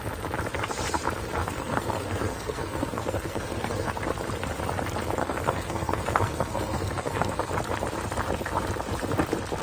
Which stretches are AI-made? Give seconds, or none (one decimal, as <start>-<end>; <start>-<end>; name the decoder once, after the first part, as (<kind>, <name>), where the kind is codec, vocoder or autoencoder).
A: 1.4-3.9 (codec, SNAC); 5.2-7.5